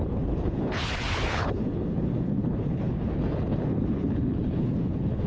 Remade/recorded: remade